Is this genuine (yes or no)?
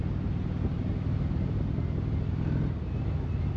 yes